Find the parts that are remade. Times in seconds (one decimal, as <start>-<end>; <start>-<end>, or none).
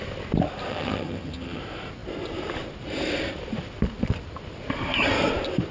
0.7-1.6